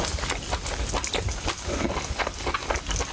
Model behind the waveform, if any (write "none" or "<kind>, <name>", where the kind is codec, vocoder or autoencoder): none